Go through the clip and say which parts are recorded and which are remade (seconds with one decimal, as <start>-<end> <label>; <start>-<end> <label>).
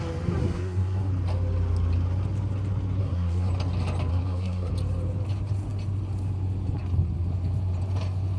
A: 0.0-0.4 recorded; 0.4-1.1 remade; 1.1-3.0 recorded; 3.0-3.5 remade; 3.5-4.1 recorded; 4.1-4.7 remade; 4.7-8.4 recorded